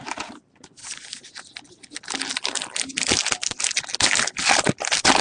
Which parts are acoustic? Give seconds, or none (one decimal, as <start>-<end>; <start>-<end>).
0.0-5.2